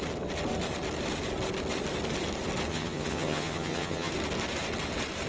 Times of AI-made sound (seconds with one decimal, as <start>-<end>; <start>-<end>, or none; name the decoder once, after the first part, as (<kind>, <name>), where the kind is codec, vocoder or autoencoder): 2.7-4.1 (vocoder, HiFi-GAN)